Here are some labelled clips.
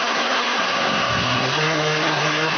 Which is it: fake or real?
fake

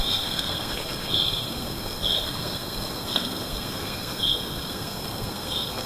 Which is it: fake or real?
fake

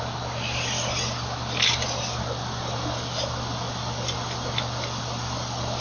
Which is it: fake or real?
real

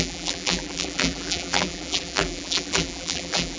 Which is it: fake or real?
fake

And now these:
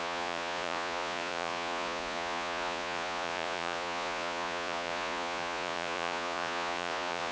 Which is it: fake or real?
fake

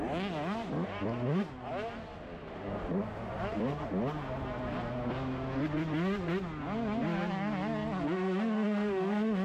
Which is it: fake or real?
real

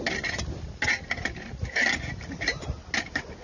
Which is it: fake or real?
real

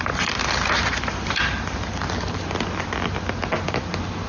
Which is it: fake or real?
real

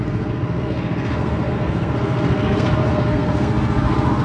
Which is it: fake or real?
fake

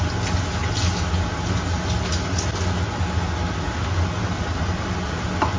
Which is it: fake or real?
real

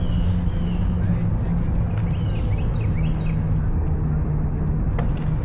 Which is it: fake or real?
real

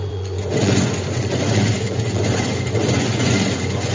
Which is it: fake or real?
fake